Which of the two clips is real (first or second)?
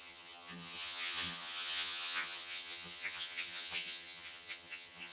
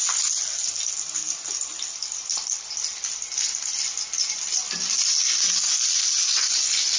second